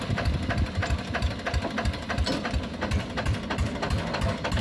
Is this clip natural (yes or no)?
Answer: yes